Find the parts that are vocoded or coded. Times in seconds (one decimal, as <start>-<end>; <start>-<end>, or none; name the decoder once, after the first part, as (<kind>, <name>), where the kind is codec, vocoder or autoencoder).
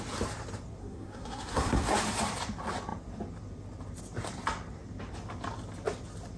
0.8-1.8 (codec, SNAC)